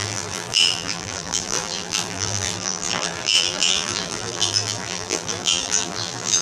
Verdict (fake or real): fake